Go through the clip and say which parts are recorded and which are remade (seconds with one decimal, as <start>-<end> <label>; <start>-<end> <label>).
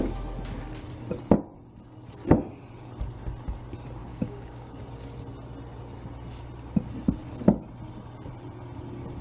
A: 0.0-4.0 recorded; 4.0-4.8 remade; 4.8-9.2 recorded